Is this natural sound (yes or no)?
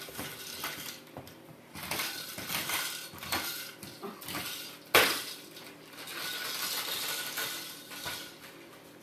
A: yes